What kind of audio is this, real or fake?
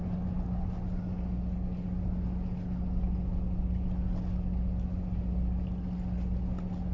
real